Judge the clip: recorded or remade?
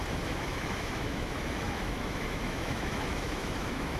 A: remade